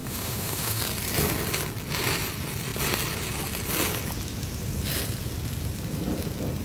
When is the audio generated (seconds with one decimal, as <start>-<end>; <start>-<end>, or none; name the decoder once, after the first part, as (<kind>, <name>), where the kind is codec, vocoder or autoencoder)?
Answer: 0.0-0.8 (autoencoder, DAC-VAE)